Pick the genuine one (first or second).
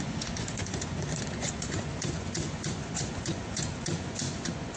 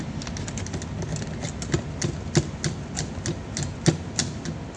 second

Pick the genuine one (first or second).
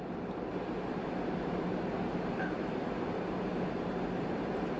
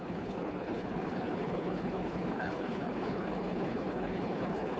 first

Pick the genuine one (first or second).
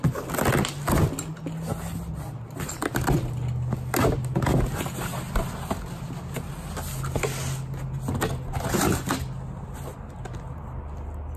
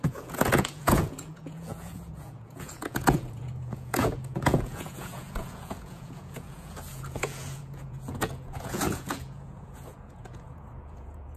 first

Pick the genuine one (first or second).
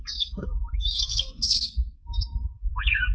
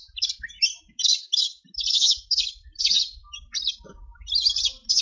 second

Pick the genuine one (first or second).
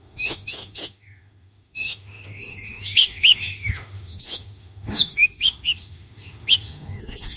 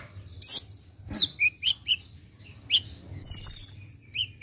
second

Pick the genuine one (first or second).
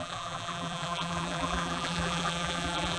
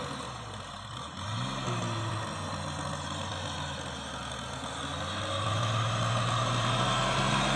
second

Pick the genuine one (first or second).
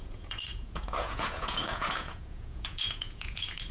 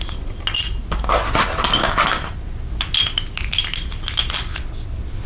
second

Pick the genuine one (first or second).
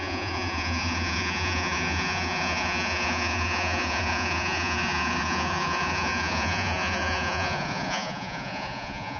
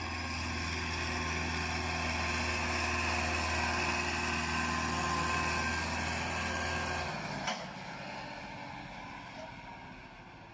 second